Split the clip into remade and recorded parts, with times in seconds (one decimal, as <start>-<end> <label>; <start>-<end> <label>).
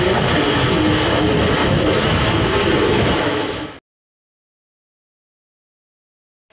0.0-1.6 recorded; 1.6-2.3 remade; 2.3-2.9 recorded; 2.9-3.6 remade; 3.6-6.5 recorded